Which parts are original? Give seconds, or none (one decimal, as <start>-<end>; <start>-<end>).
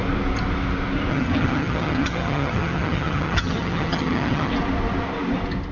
0.0-1.1; 4.5-5.7